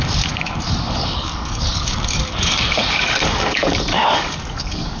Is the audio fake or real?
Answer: fake